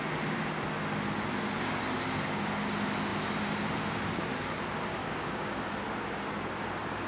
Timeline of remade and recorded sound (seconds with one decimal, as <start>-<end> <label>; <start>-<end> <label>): 0.0-5.0 recorded; 5.0-5.6 remade; 5.6-7.1 recorded